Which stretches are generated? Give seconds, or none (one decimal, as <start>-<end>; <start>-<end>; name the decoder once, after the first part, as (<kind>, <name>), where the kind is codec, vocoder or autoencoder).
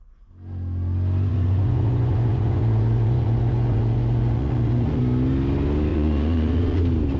1.3-5.0 (vocoder, Vocos); 5.9-6.8